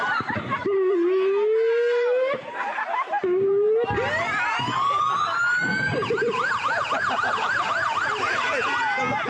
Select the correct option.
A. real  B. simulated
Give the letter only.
A